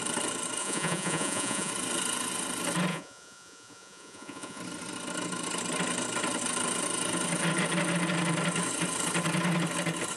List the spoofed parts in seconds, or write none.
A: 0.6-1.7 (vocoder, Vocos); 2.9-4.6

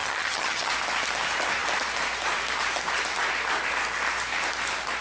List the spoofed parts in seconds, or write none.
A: 0.0-0.7 (vocoder, HiFi-GAN)

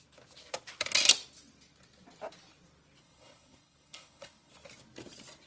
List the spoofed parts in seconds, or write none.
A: 3.0-4.5 (codec, HILCodec)

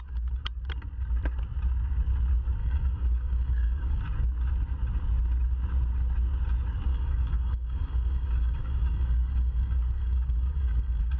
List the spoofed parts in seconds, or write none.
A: 2.6-4.0 (codec, DAC); 6.9-11.2

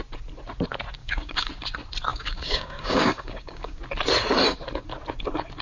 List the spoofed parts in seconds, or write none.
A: 1.0-1.5 (codec, DAC); 2.1-3.8

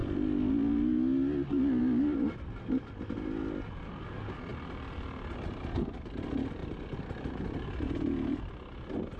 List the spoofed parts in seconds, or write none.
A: none